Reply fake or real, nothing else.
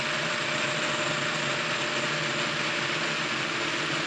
real